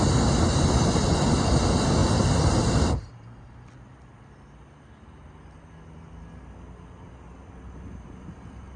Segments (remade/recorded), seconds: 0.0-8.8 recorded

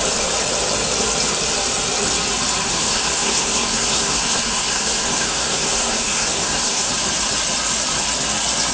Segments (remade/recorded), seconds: 0.0-2.7 recorded; 2.7-6.9 remade; 6.9-8.7 recorded

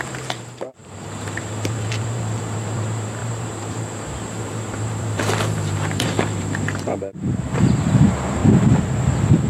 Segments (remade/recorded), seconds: 0.0-8.4 remade; 8.4-9.5 recorded

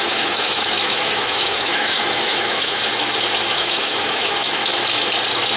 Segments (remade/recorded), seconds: 0.0-2.8 remade; 2.8-3.5 recorded; 3.5-4.6 remade; 4.6-5.6 recorded